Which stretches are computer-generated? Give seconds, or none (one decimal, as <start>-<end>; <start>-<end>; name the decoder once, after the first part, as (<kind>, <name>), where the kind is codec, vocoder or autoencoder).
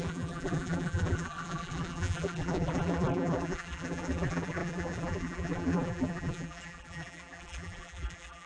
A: 0.0-8.5 (vocoder, BigVGAN v2)